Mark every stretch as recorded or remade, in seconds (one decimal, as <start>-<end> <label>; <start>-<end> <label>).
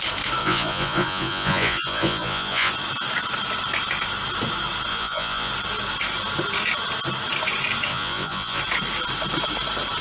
0.0-0.4 recorded; 0.4-2.7 remade; 2.7-4.9 recorded; 4.9-5.5 remade; 5.5-7.9 recorded; 7.9-8.6 remade; 8.6-10.0 recorded